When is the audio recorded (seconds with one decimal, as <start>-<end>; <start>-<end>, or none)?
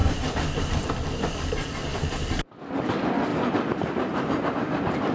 0.9-1.9; 2.5-3.3; 4.5-5.1